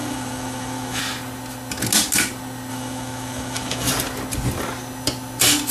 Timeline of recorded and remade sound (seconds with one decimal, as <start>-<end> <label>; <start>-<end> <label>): 0.0-1.0 remade; 1.0-2.7 recorded; 2.7-3.9 remade; 3.9-5.7 recorded